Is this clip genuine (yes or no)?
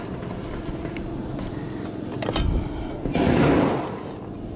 yes